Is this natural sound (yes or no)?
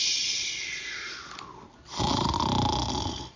yes